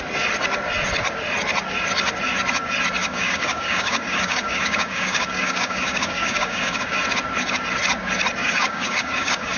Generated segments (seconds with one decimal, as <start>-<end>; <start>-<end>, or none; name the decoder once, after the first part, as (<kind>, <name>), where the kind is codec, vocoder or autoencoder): 3.0-7.0 (codec, DAC); 8.4-9.6